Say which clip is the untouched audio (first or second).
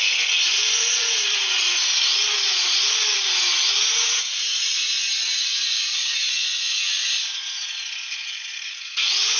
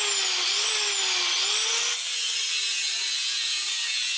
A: second